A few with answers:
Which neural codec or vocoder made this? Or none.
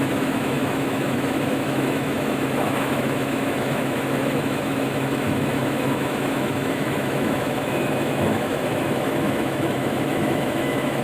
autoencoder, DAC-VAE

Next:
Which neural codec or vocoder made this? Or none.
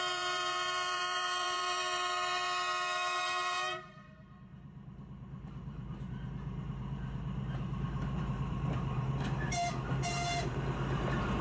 vocoder, BigVGAN v2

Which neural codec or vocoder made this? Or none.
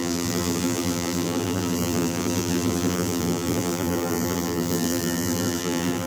vocoder, BigVGAN v2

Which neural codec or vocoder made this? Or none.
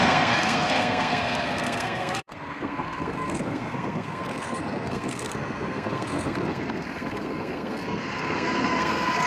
codec, SNAC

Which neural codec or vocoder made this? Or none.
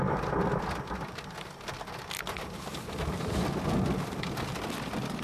none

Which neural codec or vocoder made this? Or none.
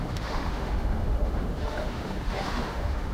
autoencoder, DAC-VAE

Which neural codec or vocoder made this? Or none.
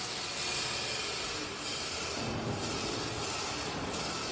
none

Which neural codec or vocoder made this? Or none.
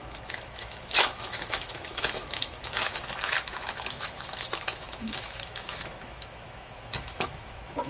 autoencoder, DAC-VAE